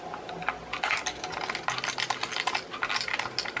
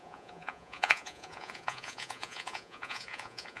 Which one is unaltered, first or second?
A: first